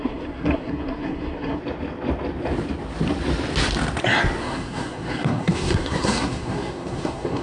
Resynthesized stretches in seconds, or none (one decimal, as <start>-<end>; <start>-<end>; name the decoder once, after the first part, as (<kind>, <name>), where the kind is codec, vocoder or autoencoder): 0.0-1.6 (codec, SNAC); 4.4-7.4